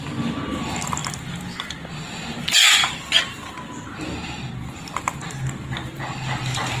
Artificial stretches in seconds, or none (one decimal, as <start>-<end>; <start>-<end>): none